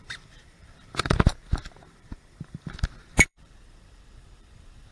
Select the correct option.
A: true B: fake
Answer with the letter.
B